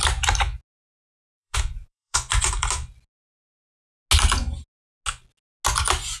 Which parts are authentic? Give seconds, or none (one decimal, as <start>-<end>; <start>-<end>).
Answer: 0.0-1.2; 2.5-6.2